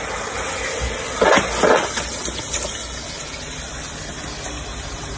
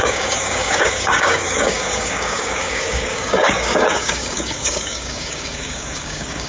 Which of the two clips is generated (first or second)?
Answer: second